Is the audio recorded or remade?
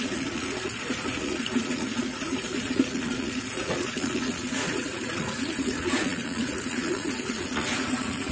remade